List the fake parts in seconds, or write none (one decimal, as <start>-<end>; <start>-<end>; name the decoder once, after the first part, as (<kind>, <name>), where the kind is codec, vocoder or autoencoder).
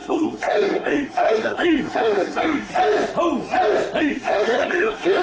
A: 0.0-2.7 (codec, SNAC); 4.0-5.2